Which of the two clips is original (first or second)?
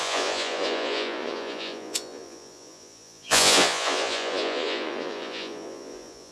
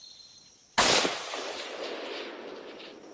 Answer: second